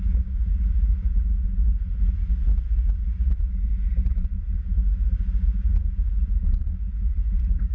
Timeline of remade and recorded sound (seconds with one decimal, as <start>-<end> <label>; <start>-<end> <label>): 0.0-7.7 recorded